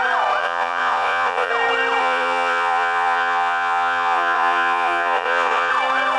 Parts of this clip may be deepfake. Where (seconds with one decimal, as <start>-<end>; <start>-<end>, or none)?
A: 0.4-1.5; 2.0-5.7